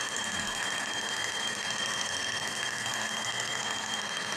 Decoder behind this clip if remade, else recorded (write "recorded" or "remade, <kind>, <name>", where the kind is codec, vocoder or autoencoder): remade, codec, SNAC